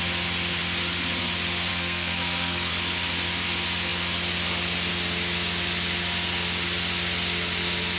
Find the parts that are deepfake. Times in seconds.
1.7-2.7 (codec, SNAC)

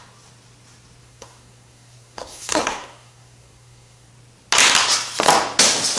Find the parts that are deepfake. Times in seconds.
1.0-4.1 (codec, SNAC)

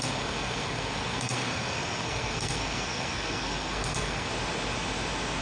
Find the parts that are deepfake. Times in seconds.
0.0-4.3 (codec, SNAC)

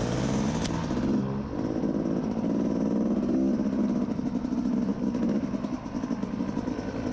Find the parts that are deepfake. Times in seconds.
none